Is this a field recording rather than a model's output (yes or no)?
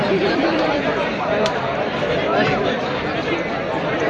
no